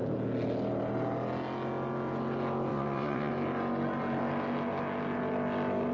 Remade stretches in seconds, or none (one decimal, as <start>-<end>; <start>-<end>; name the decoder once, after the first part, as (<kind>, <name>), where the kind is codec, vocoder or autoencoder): 2.7-3.3 (vocoder, Vocos)